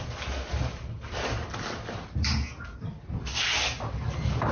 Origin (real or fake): real